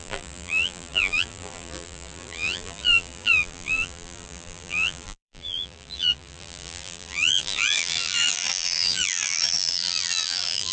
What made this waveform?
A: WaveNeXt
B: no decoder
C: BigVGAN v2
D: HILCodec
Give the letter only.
C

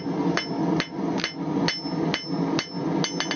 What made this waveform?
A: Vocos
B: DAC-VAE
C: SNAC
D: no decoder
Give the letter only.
D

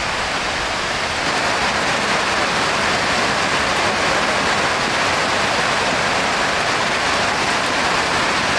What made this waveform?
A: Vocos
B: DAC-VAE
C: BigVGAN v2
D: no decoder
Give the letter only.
D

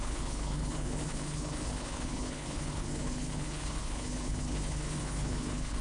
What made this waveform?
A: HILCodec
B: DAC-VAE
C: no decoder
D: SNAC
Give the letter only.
A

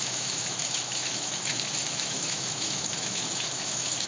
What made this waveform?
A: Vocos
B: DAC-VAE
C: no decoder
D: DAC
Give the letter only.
B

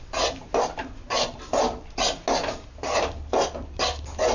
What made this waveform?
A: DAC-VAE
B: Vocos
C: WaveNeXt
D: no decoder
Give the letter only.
D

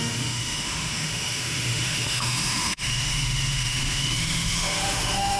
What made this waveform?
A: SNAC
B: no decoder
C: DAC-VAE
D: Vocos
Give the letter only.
C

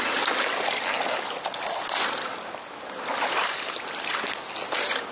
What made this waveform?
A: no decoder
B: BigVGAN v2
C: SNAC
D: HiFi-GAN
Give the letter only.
A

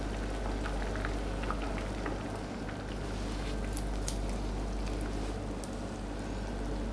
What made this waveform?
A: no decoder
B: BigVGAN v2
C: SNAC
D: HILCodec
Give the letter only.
A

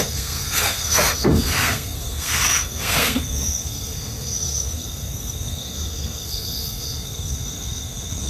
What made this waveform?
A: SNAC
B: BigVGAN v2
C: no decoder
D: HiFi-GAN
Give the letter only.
A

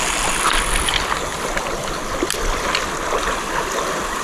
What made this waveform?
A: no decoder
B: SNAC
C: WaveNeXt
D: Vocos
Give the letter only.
A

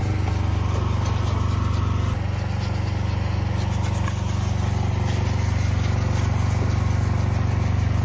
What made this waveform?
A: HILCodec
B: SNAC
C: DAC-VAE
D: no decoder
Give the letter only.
D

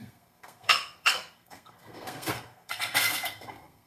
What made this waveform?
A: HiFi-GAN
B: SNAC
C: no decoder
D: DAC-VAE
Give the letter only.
B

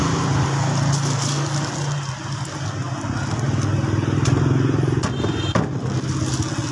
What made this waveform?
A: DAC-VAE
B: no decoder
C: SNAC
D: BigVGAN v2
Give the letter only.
B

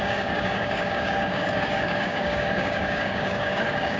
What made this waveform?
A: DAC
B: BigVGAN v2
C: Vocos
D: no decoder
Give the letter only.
A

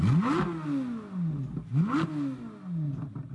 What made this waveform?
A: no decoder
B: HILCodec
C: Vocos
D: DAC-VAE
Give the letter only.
A